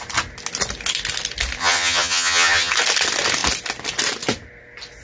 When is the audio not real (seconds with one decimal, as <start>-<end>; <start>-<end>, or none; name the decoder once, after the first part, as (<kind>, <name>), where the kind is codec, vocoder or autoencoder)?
1.6-2.7 (vocoder, HiFi-GAN)